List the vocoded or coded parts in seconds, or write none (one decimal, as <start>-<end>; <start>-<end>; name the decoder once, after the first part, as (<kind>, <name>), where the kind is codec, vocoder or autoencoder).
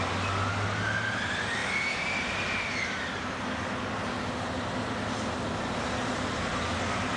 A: none